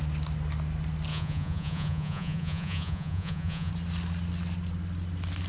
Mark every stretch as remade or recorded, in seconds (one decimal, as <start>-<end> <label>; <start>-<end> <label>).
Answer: 0.0-1.1 recorded; 1.1-3.7 remade; 3.7-5.5 recorded